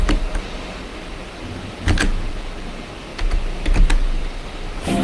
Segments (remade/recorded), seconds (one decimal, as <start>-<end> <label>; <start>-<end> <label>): 0.0-5.0 recorded